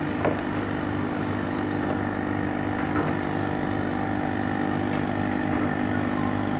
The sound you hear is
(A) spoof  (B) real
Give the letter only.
B